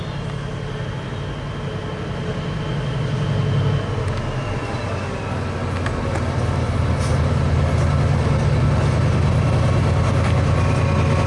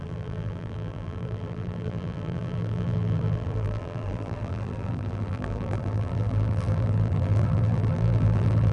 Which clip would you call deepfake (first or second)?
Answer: second